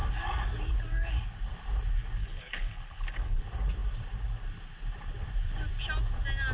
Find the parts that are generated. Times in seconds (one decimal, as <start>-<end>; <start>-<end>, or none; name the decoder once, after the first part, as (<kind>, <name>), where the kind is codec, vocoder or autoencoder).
2.2-3.4 (codec, HILCodec)